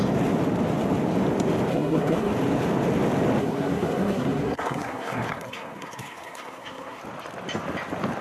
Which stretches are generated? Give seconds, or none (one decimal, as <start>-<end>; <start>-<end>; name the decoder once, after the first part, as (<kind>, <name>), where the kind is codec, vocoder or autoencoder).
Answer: 1.7-2.3 (codec, SNAC); 3.4-7.0